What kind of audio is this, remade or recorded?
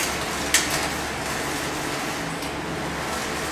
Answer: recorded